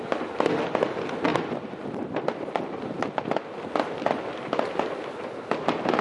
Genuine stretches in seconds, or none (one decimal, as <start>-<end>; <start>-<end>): 0.0-6.0